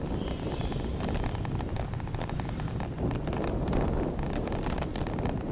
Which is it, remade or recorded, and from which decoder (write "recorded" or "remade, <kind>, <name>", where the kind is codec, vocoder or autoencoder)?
remade, vocoder, BigVGAN v2